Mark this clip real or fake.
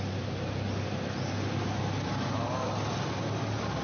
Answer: real